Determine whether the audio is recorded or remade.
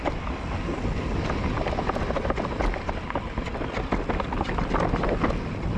recorded